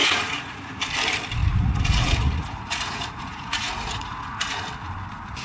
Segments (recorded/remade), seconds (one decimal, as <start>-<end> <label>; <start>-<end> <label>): 0.0-0.7 remade; 0.7-1.4 recorded; 1.4-4.6 remade; 4.6-5.4 recorded